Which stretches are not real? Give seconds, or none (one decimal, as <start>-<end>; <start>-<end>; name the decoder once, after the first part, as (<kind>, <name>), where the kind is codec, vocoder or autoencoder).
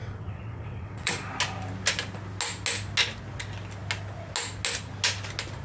0.0-1.1 (vocoder, WaveNeXt)